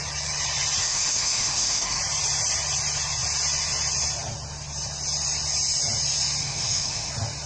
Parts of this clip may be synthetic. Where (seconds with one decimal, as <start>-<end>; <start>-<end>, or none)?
0.8-2.0; 6.4-7.1